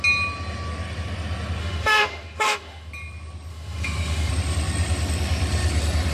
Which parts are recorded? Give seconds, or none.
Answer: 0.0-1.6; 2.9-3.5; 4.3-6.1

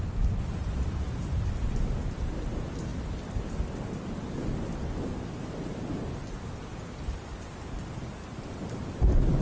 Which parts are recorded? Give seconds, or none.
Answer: 0.0-9.4

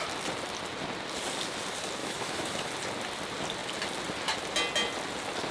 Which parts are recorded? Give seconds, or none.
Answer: 0.0-2.0; 2.7-5.5

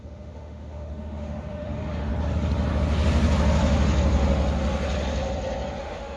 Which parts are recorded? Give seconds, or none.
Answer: 2.1-5.8

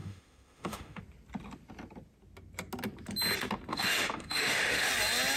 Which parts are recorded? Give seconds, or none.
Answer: 1.0-3.7; 4.9-5.4

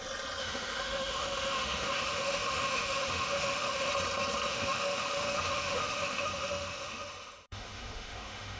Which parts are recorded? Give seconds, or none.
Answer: 0.0-0.4; 3.9-4.5

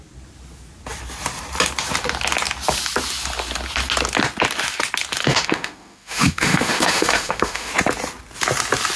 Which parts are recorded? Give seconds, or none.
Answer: 0.0-5.2; 7.7-9.0